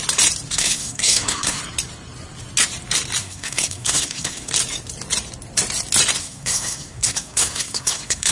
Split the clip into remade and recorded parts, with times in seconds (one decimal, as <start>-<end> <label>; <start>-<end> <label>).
0.0-0.5 recorded; 0.5-1.6 remade; 1.6-3.2 recorded; 3.2-4.5 remade; 4.5-6.2 recorded; 6.2-8.3 remade